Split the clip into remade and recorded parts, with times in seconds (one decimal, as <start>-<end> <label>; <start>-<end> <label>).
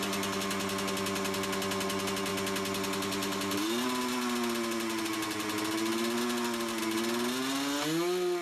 0.0-8.4 recorded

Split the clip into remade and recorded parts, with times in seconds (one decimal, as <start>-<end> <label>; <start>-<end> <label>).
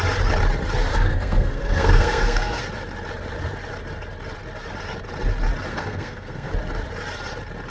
0.0-0.9 recorded; 0.9-2.6 remade; 2.6-5.7 recorded; 5.7-6.5 remade; 6.5-7.7 recorded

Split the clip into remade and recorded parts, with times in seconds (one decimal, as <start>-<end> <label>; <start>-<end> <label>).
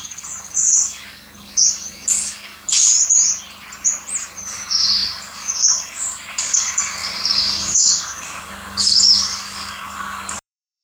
0.0-2.7 remade; 2.7-4.4 recorded; 4.4-10.8 remade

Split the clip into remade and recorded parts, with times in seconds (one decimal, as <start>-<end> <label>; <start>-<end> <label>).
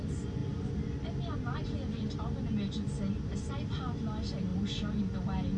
0.0-5.6 recorded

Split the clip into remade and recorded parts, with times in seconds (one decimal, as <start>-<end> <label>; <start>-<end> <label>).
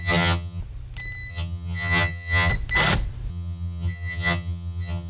0.0-0.6 remade; 0.6-1.3 recorded; 1.3-2.5 remade; 2.5-3.3 recorded; 3.3-5.1 remade